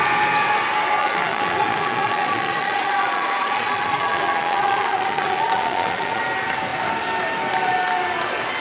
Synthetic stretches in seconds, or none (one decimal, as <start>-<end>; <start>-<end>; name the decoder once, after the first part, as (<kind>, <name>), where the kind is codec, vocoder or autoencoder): 1.0-6.2 (vocoder, Vocos)